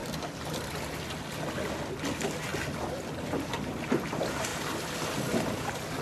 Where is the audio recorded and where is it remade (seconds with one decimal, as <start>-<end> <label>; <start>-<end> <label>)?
0.0-6.0 recorded